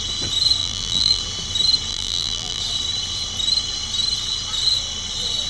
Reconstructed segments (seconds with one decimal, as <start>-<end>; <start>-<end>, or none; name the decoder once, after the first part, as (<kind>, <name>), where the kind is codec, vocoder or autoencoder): 0.6-1.2 (vocoder, BigVGAN v2); 1.9-2.6